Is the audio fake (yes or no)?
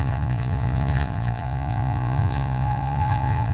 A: yes